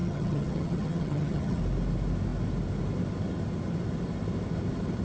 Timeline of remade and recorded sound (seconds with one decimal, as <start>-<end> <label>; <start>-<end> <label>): 0.0-1.6 remade; 1.6-5.0 recorded